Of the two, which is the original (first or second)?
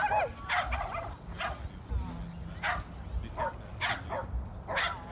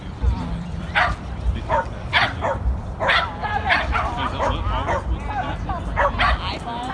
first